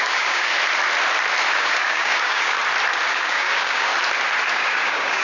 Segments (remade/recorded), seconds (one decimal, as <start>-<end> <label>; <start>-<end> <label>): 0.0-0.5 remade; 0.5-1.6 recorded; 1.6-2.6 remade; 2.6-3.2 recorded; 3.2-3.9 remade; 3.9-4.5 recorded; 4.5-5.2 remade